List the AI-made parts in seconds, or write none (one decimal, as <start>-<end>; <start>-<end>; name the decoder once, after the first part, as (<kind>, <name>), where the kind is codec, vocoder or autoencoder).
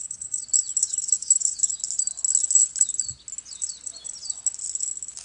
0.8-1.7 (autoencoder, DAC-VAE)